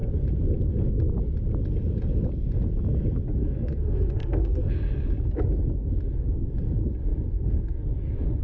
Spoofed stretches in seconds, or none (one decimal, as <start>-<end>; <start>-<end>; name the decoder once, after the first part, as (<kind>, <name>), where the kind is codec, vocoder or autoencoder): 3.4-4.7 (codec, SNAC)